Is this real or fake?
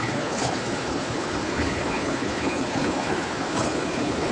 fake